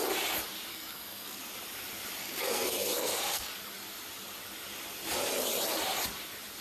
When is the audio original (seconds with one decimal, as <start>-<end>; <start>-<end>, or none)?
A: 0.0-0.7; 1.4-2.2; 3.5-6.6

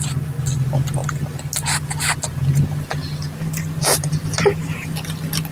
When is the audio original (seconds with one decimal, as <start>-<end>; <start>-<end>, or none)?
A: 0.0-5.5

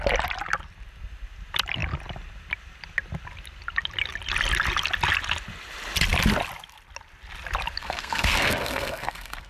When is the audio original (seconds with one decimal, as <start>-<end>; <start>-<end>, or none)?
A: 0.0-7.8

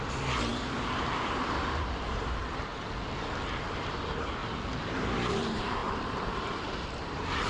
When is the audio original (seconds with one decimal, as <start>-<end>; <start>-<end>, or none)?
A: 2.7-3.7; 4.4-4.9

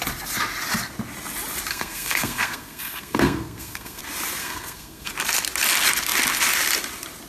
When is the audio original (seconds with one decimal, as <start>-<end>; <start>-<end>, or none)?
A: 0.0-1.7; 4.0-4.4; 5.1-7.3

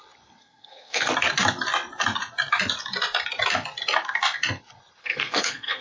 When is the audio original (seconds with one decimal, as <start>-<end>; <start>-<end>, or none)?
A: 0.0-0.4; 1.1-5.0

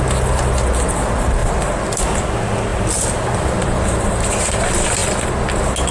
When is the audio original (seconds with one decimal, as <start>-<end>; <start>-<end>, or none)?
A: 0.0-1.4; 2.3-2.7; 4.3-5.9